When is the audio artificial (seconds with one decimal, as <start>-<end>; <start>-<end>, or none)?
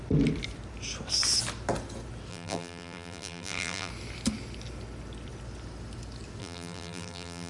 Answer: 2.3-3.9; 6.4-7.5